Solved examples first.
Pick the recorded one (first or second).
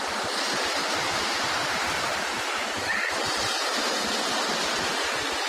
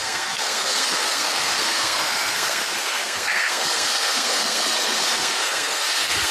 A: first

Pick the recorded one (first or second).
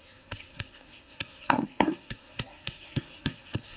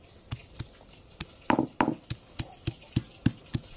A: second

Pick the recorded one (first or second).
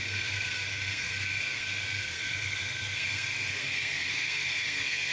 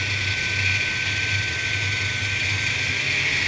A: second